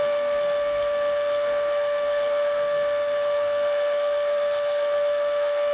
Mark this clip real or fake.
fake